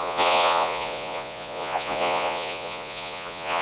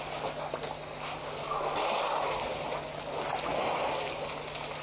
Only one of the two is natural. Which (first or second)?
second